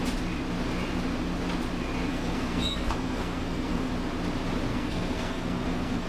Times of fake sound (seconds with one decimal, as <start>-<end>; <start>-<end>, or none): 2.1-3.9; 4.7-6.1